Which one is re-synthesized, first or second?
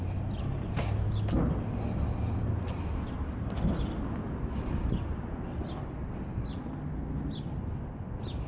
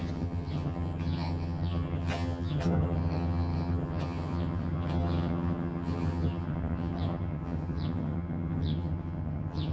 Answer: second